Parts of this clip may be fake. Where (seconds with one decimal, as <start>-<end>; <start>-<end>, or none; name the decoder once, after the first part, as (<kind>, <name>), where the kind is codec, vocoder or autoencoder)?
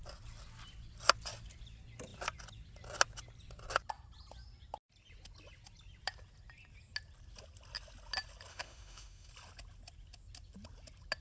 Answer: 8.5-9.3 (autoencoder, DAC-VAE)